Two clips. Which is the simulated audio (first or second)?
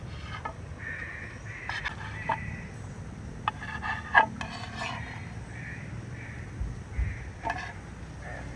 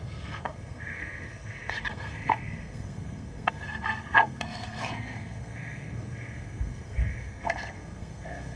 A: second